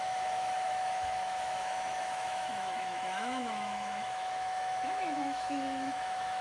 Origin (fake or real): fake